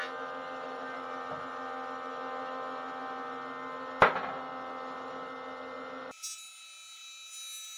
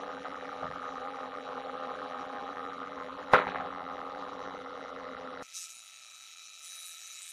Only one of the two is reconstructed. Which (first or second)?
second